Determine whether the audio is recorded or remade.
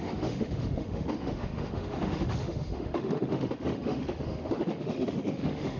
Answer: remade